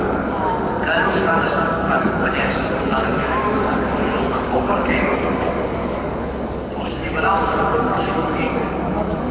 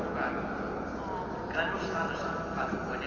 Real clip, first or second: second